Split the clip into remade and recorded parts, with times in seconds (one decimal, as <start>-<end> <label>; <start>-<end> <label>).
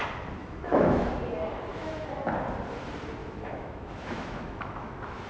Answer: 0.0-0.4 recorded; 0.4-1.1 remade; 1.1-1.7 recorded; 1.7-2.2 remade; 2.2-3.2 recorded; 3.2-5.3 remade